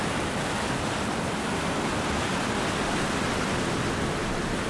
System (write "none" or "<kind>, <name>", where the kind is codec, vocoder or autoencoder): none